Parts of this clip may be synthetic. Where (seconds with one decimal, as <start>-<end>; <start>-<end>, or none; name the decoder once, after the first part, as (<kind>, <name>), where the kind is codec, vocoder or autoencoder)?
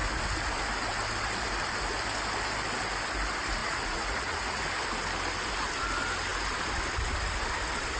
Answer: 3.6-4.6 (vocoder, Vocos)